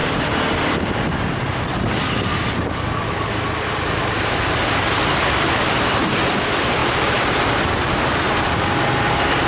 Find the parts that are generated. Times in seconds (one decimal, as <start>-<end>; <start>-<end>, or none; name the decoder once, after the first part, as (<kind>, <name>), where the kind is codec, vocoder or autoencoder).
none